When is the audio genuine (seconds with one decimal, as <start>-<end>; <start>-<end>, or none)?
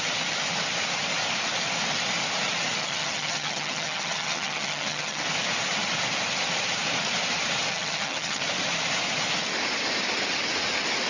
0.0-2.8; 5.2-7.7; 8.4-11.1